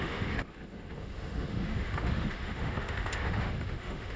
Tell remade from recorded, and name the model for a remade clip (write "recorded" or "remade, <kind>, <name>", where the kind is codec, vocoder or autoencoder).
remade, autoencoder, DAC-VAE